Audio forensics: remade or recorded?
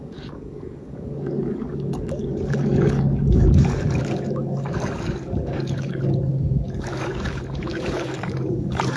remade